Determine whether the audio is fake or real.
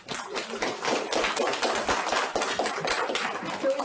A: real